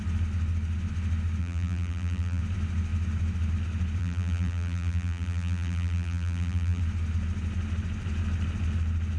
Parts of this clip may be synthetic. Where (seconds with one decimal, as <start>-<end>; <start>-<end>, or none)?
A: 1.4-2.4; 4.0-6.8